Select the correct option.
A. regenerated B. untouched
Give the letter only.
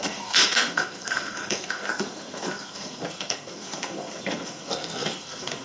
A